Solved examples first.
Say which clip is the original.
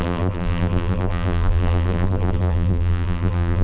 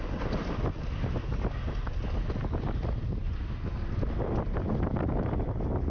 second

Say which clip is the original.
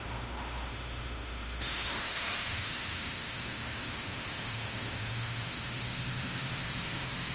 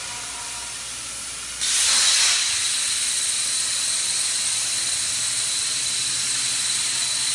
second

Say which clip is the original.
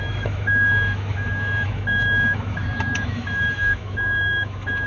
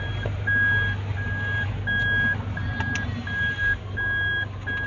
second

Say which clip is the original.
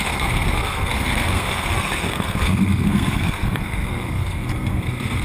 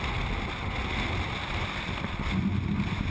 second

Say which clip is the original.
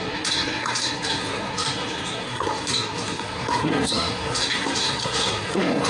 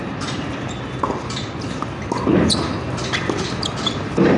second